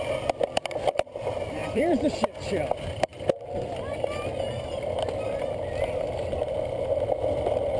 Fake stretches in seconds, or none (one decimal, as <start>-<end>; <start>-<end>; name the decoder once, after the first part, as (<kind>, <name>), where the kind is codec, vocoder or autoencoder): 0.0-3.1 (vocoder, BigVGAN v2)